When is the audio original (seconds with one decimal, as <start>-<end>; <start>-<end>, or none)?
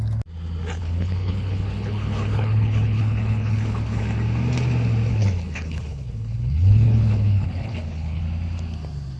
0.0-0.8; 4.0-5.1; 8.2-9.2